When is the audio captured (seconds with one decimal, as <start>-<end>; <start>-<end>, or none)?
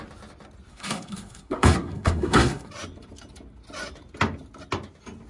0.0-0.7; 2.7-5.3